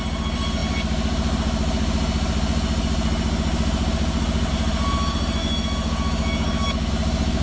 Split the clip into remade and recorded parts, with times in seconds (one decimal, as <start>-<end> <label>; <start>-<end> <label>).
0.0-5.4 recorded; 5.4-6.9 remade; 6.9-7.4 recorded